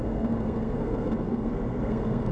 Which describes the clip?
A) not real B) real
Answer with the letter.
A